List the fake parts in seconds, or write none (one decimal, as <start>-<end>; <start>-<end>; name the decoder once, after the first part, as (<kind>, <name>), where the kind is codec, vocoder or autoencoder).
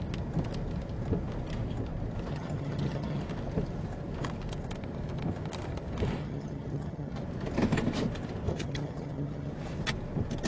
2.3-3.2 (vocoder, HiFi-GAN); 6.2-7.2; 8.5-9.5